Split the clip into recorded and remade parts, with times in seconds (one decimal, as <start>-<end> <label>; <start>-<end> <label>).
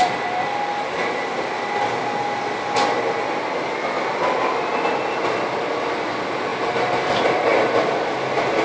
0.0-6.5 recorded; 6.5-7.1 remade; 7.1-8.6 recorded